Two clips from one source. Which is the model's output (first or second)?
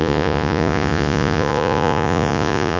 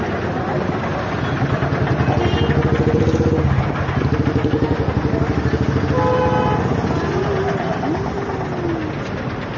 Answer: first